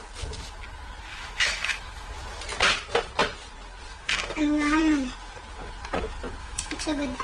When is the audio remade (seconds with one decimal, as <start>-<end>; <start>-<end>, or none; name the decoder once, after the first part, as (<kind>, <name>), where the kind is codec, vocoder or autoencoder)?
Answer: 1.1-2.1 (autoencoder, DAC-VAE); 3.9-4.8; 6.4-7.2